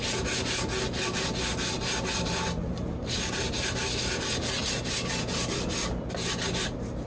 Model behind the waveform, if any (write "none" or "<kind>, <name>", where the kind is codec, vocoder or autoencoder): none